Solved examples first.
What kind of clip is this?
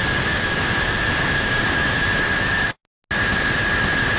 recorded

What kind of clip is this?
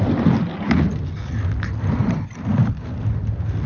recorded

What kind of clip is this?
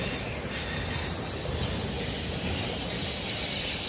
recorded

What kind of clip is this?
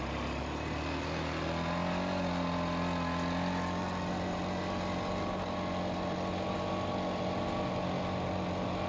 recorded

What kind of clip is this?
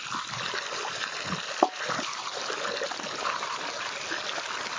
recorded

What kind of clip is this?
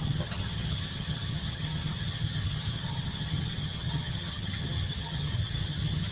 remade